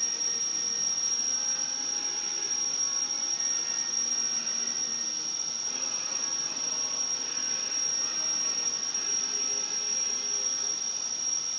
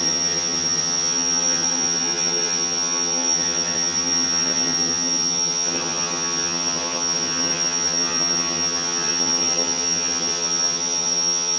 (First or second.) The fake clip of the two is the second